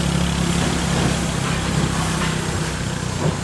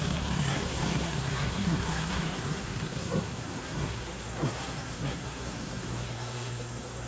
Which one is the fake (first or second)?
second